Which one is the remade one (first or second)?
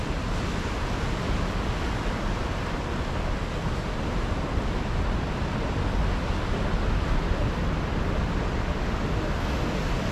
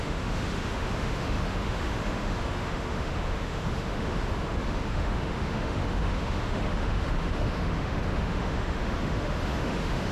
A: second